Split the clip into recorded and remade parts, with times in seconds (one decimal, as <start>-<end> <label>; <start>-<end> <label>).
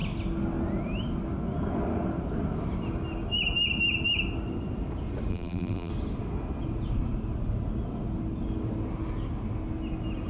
0.0-5.3 recorded; 5.3-5.9 remade; 5.9-10.3 recorded